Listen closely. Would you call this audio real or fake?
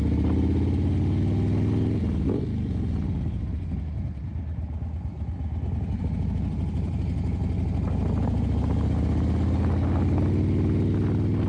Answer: real